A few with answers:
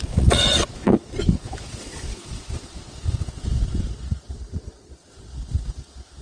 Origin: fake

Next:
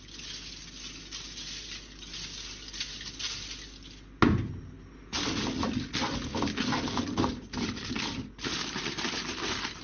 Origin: real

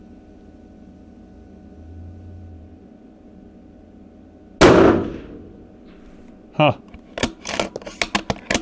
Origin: real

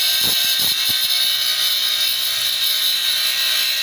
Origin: real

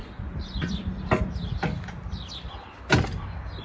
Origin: real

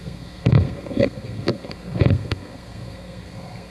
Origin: fake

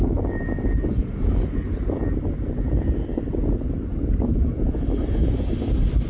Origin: real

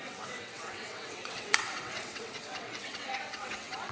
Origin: fake